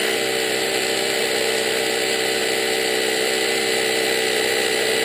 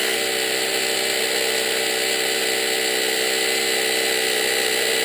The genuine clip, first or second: second